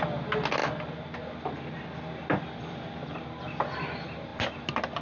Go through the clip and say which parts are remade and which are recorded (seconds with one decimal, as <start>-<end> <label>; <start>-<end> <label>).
0.0-5.0 recorded